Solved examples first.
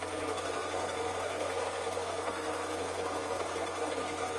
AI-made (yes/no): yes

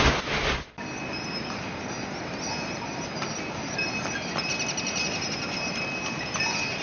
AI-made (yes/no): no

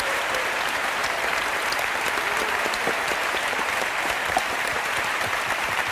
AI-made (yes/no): yes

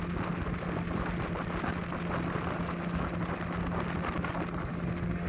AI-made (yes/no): no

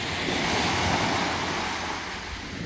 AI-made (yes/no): no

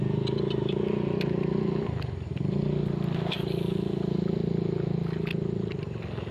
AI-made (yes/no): no